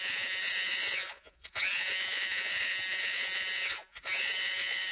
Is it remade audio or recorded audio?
remade